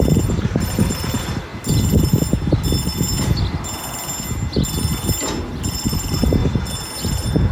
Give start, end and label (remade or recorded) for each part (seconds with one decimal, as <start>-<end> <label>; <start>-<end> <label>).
0.0-1.5 remade; 1.5-5.5 recorded; 5.5-6.4 remade; 6.4-7.0 recorded; 7.0-7.5 remade